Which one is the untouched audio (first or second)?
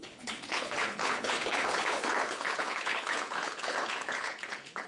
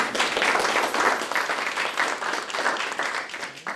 second